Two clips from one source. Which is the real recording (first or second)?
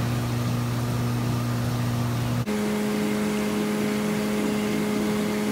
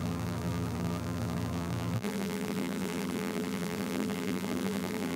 first